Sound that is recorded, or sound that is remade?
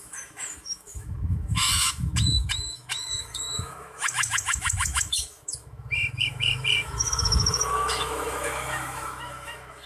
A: remade